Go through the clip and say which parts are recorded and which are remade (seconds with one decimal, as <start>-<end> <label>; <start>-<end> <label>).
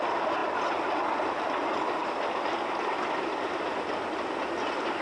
0.0-5.0 recorded